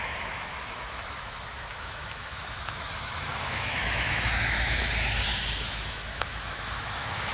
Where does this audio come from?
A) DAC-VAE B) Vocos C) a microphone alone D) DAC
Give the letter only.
A